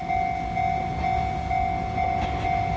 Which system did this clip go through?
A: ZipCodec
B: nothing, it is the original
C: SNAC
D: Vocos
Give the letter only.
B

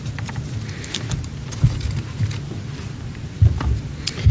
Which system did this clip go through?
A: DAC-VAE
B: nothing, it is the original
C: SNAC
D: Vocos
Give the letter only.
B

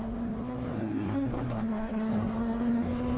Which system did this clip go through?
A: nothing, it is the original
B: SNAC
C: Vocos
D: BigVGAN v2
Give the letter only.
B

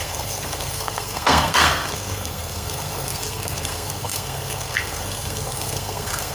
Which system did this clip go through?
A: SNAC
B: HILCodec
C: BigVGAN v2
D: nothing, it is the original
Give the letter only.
A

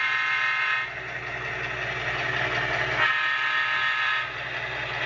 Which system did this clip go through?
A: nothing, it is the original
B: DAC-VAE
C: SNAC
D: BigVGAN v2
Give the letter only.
A